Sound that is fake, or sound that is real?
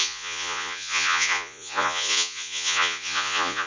fake